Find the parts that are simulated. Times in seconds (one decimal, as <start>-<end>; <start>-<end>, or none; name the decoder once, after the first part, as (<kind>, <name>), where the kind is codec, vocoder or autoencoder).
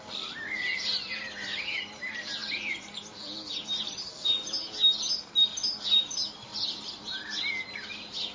none